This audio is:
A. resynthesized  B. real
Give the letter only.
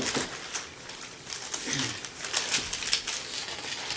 B